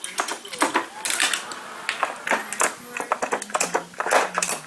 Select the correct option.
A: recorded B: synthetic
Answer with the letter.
A